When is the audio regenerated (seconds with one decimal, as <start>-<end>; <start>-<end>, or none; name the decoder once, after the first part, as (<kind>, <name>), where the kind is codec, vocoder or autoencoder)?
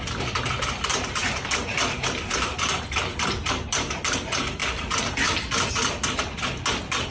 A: 1.2-2.6 (vocoder, BigVGAN v2); 4.6-5.7